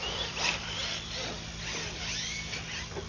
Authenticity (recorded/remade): recorded